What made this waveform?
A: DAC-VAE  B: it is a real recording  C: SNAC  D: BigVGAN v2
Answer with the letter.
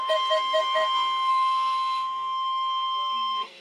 C